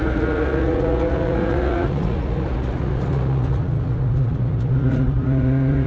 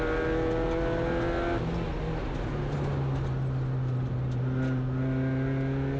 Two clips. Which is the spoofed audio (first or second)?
first